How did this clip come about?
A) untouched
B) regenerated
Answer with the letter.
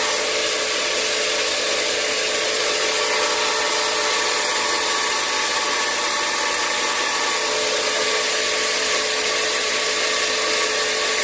A